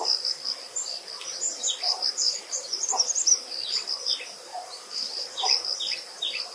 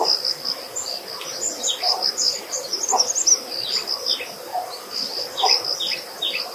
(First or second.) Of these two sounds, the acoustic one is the second